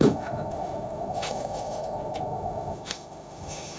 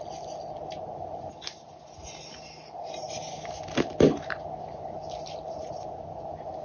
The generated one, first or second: first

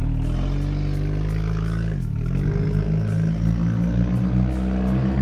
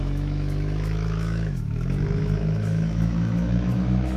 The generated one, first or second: second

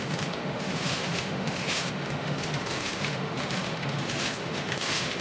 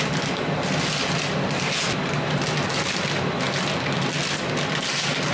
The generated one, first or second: first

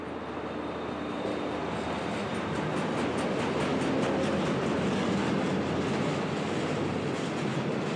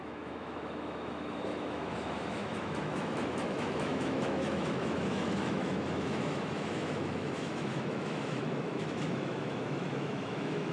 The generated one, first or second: second